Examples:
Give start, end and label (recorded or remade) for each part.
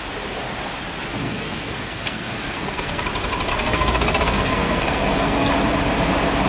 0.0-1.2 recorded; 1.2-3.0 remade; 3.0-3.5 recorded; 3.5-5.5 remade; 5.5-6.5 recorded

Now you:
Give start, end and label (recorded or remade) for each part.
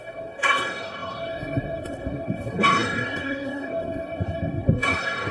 0.0-5.3 remade